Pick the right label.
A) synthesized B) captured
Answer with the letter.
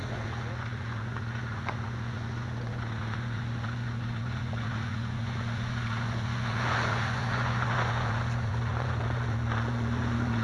A